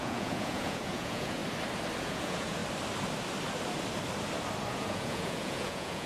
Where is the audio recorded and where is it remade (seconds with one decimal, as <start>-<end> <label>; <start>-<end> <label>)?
0.0-1.4 remade; 1.4-2.0 recorded; 2.0-2.6 remade; 2.6-4.7 recorded; 4.7-6.1 remade